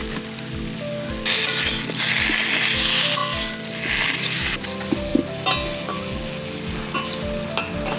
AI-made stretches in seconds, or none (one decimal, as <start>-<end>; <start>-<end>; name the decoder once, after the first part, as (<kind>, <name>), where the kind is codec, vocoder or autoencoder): none